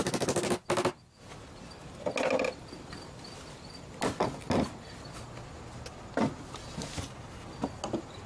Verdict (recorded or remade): recorded